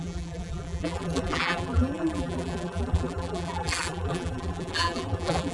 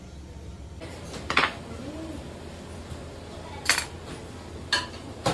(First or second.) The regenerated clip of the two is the first